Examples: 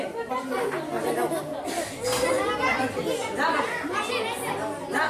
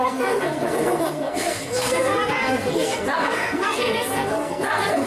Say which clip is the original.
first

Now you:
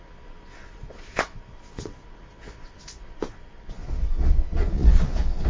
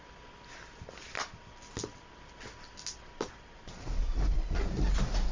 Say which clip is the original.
second